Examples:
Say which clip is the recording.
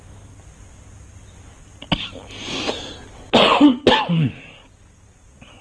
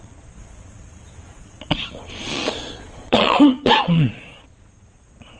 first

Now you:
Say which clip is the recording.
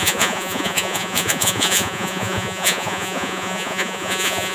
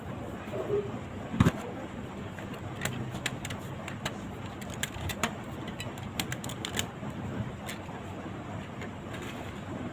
second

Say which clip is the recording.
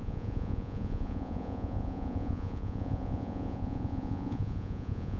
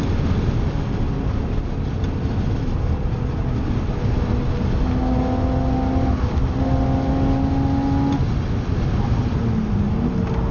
second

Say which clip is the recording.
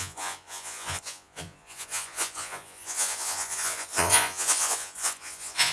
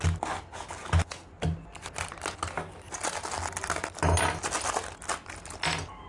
second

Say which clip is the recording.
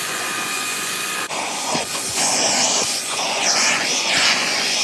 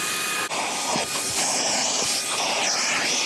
second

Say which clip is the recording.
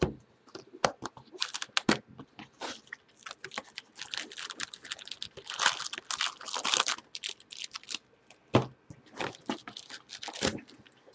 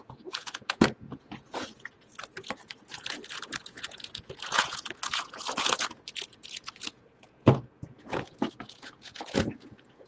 first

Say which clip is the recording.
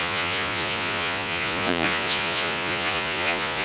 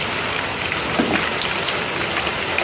second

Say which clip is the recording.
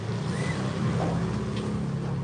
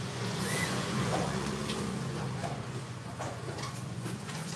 first